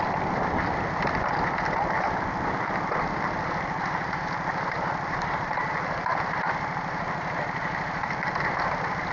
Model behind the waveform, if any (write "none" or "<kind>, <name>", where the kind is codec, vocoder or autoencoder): none